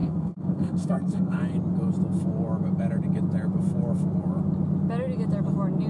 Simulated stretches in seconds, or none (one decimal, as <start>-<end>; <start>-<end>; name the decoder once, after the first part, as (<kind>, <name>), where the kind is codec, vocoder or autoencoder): 0.0-1.4 (codec, SNAC)